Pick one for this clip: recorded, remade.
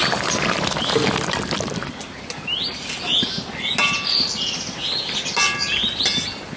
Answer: recorded